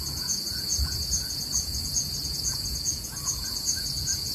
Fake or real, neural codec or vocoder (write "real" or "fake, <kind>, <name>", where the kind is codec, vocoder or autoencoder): fake, vocoder, Vocos